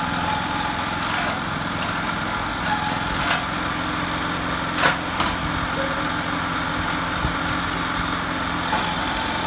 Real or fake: real